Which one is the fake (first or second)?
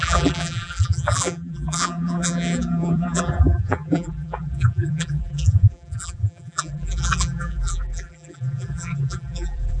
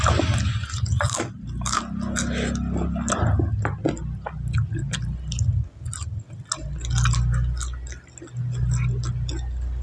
first